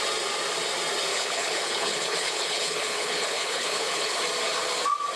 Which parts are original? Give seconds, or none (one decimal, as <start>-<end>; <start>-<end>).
0.0-1.1; 4.2-5.2